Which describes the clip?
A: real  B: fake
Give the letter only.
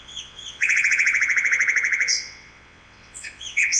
B